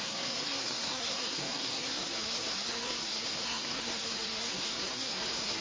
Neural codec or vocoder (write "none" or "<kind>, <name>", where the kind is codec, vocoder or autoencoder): codec, SNAC